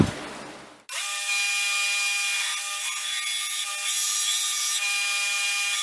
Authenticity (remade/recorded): recorded